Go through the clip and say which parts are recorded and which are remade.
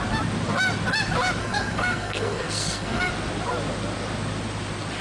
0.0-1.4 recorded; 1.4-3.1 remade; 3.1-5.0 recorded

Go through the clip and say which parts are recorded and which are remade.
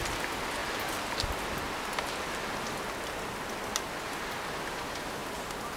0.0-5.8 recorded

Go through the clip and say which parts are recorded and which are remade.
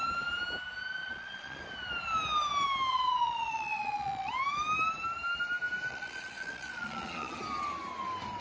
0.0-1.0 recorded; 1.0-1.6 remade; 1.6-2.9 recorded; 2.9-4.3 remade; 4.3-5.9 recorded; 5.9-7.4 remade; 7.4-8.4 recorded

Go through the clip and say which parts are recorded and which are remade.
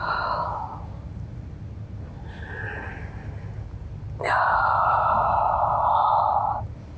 0.0-7.0 recorded